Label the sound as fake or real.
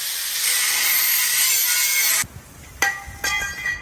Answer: real